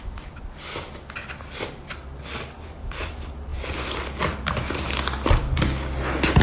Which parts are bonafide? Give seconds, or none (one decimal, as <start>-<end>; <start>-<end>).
0.0-3.5; 4.0-6.4